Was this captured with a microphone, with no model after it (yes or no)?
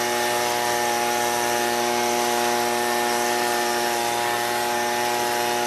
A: yes